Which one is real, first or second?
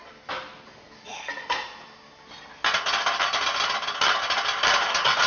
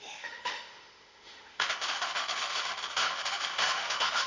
first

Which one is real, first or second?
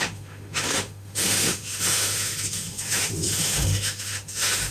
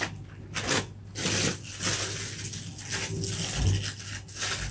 second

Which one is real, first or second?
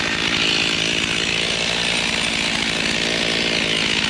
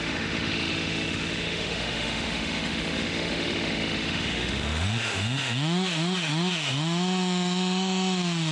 first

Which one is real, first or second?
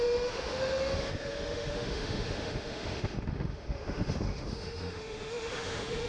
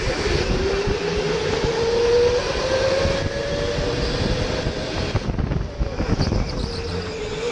second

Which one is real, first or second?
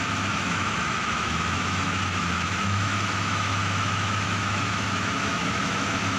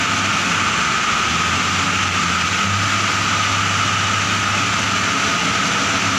second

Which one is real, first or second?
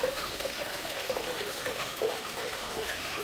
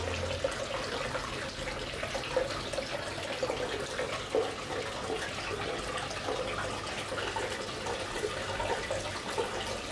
second